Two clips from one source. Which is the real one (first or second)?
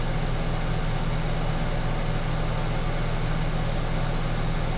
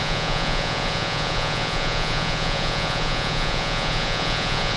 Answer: first